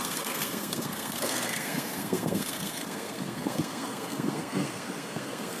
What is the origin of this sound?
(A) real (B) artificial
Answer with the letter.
B